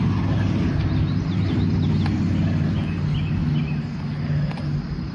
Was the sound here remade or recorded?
recorded